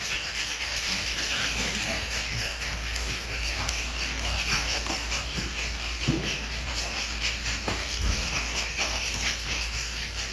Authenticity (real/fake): fake